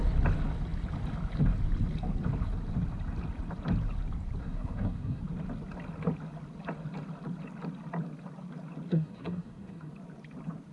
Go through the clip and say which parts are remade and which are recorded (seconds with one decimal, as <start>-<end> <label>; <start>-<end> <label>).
0.0-4.4 recorded; 4.4-5.2 remade; 5.2-8.9 recorded; 8.9-9.9 remade; 9.9-10.7 recorded